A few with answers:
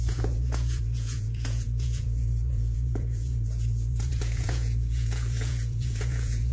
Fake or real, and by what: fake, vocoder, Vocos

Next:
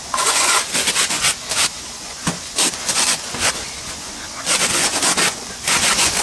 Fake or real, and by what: fake, vocoder, Vocos